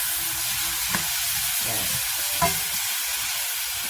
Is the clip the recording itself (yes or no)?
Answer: yes